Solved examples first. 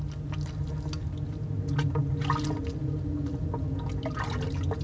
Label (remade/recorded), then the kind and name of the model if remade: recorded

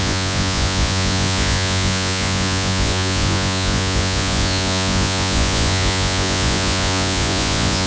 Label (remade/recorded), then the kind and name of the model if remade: remade, vocoder, Vocos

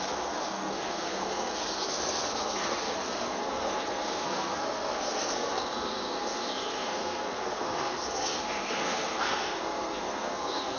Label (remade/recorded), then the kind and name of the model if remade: remade, codec, SNAC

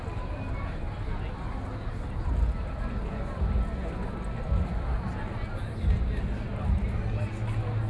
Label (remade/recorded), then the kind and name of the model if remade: recorded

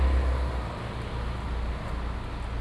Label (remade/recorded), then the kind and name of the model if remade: recorded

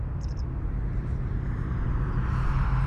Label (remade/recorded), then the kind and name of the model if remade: remade, vocoder, BigVGAN v2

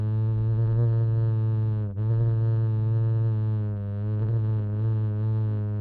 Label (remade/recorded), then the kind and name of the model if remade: recorded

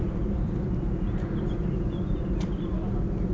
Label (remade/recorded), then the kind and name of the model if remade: recorded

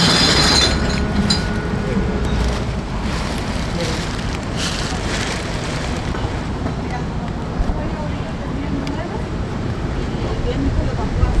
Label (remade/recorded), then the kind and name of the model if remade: remade, vocoder, BigVGAN v2